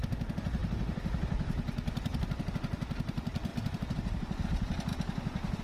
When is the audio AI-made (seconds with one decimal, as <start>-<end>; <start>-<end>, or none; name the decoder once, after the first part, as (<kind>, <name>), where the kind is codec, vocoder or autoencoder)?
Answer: none